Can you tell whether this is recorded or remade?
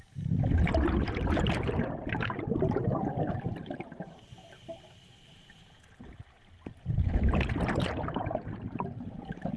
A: recorded